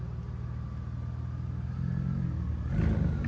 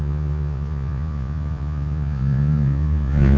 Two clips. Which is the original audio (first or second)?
first